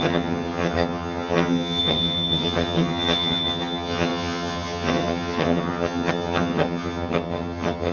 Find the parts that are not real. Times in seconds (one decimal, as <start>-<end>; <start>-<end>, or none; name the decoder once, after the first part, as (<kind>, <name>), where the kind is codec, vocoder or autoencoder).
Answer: 0.0-7.9 (vocoder, HiFi-GAN)

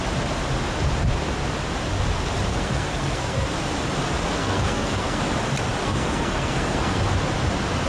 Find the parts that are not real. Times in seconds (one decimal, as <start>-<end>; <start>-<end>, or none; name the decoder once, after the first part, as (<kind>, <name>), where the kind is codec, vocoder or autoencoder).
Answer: 2.5-3.5 (codec, SNAC); 4.4-5.2; 5.8-7.0

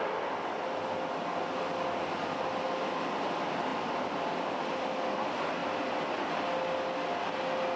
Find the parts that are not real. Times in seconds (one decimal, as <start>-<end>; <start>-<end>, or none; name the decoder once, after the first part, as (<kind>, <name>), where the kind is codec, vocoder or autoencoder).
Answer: none

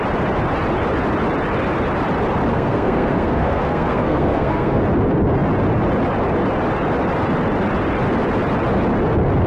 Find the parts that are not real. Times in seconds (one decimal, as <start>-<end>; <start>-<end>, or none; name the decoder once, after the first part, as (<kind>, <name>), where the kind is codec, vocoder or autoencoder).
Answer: 2.5-4.8 (codec, SNAC)

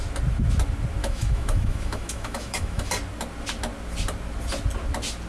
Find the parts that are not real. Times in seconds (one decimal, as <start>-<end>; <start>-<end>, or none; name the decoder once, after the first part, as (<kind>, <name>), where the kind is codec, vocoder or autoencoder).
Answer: 1.0-2.9 (autoencoder, DAC-VAE)